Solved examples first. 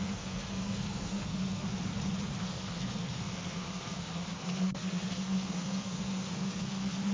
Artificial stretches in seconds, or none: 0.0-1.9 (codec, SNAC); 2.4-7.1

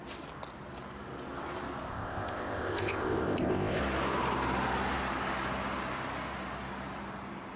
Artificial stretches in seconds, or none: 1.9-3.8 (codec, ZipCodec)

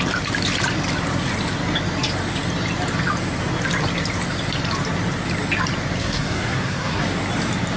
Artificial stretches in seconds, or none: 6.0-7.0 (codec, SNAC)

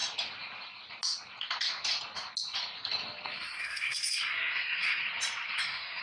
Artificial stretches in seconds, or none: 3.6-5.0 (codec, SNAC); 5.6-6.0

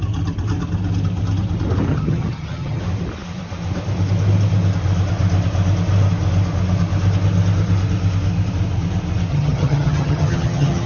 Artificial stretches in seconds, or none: 1.9-2.8 (vocoder, HiFi-GAN); 9.3-10.9

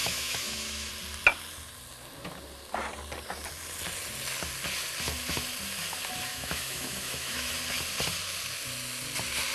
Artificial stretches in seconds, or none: 0.0-0.9 (autoencoder, DAC-VAE); 6.3-7.5